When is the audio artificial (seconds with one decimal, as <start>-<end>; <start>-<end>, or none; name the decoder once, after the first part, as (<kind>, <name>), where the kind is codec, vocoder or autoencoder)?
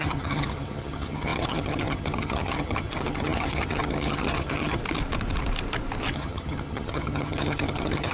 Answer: 0.0-4.8 (vocoder, HiFi-GAN); 6.1-8.1